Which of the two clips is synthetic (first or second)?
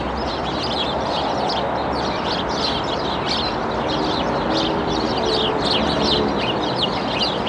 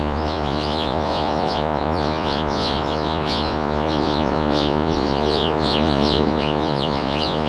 second